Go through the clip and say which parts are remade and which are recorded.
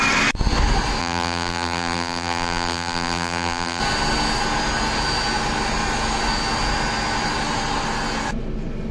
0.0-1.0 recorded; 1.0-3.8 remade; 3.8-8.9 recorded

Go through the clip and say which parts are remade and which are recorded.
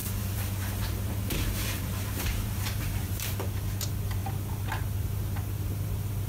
0.0-3.3 remade; 3.3-6.3 recorded